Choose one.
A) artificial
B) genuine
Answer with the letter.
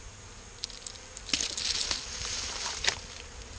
B